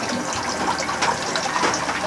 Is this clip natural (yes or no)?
yes